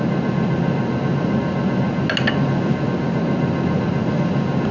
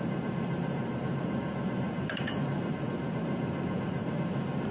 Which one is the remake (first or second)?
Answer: second